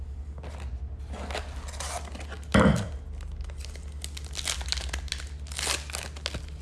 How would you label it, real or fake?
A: real